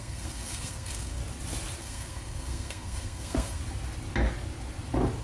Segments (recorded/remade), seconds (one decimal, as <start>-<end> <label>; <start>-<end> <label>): 0.0-1.2 remade; 1.2-1.8 recorded; 1.8-3.6 remade; 3.6-5.2 recorded